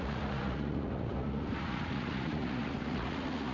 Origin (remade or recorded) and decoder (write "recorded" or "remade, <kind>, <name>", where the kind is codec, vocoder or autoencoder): remade, vocoder, Vocos